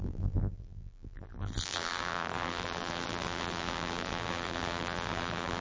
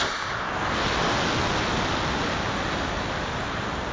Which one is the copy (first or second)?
first